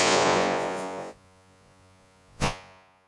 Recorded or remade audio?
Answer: remade